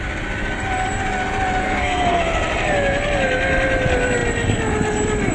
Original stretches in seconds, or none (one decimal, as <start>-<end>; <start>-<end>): 0.0-1.6; 2.2-5.3